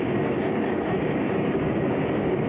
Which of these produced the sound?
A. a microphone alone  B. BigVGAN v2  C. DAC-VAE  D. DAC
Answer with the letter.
D